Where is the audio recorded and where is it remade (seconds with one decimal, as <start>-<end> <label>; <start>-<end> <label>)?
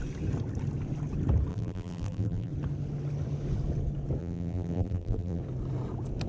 0.0-1.5 recorded; 1.5-2.5 remade; 2.5-4.2 recorded; 4.2-5.4 remade; 5.4-6.3 recorded